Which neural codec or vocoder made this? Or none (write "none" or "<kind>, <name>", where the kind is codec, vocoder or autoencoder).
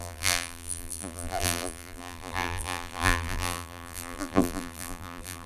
vocoder, BigVGAN v2